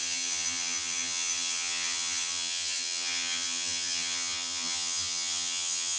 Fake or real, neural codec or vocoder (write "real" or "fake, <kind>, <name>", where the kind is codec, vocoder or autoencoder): fake, vocoder, HiFi-GAN